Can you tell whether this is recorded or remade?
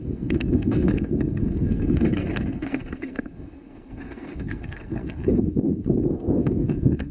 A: remade